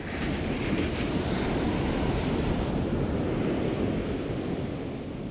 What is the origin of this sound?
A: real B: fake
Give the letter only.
A